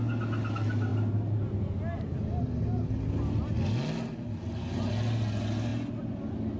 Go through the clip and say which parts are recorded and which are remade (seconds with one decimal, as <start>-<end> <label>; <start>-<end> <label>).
0.0-6.6 recorded